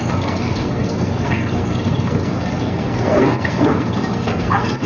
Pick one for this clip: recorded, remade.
remade